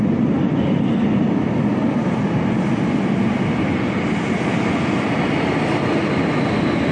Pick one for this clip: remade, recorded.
recorded